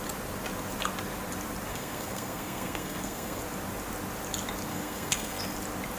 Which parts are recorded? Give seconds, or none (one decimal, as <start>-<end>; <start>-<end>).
0.0-1.7; 3.4-4.7; 5.4-6.0